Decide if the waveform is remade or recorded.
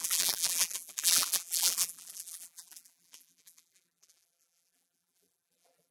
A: remade